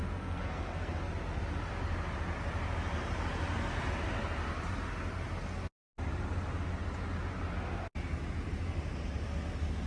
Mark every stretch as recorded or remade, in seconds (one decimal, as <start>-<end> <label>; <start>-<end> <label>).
0.0-1.1 remade; 1.1-9.9 recorded

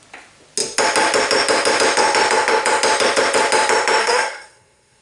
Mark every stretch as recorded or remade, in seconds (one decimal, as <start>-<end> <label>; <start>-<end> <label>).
0.0-4.0 recorded; 4.0-5.0 remade

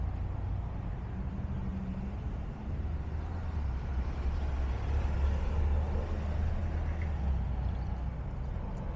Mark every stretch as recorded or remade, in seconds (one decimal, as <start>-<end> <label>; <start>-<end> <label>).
0.0-1.7 recorded; 1.7-5.5 remade; 5.5-9.0 recorded

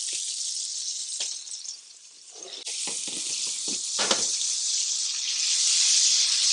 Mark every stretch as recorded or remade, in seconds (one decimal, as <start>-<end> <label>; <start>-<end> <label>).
0.0-3.6 recorded; 3.6-4.8 remade; 4.8-6.5 recorded

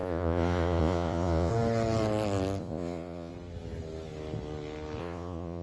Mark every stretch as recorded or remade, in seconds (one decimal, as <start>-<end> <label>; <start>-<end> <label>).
0.0-1.5 remade; 1.5-2.6 recorded; 2.6-3.3 remade; 3.3-5.0 recorded; 5.0-5.6 remade

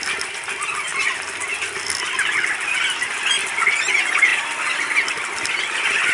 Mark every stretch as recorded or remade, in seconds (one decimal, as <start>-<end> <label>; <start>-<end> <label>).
0.0-6.1 recorded

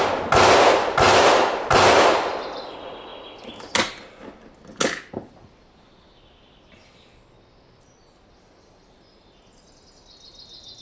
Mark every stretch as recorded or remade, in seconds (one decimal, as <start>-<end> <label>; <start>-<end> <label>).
0.0-10.8 recorded

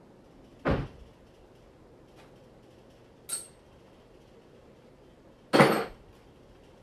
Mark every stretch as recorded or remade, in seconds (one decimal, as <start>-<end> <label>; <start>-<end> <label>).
0.0-6.8 recorded